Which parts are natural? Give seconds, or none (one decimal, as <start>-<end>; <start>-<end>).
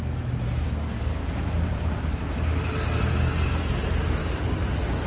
0.0-3.8